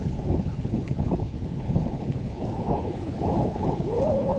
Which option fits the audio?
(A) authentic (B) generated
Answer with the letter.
B